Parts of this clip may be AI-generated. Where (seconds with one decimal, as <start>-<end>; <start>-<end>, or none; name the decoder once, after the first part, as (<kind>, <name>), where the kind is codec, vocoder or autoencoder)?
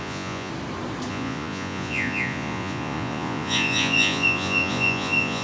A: 0.0-0.5 (vocoder, Vocos); 1.1-5.4